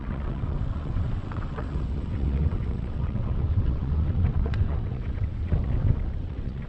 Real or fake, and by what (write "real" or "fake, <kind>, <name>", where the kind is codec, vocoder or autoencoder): fake, vocoder, WaveNeXt